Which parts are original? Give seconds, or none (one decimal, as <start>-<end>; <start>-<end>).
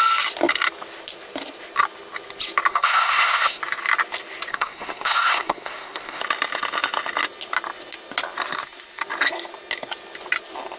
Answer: 0.0-2.7; 3.6-4.5; 6.2-10.8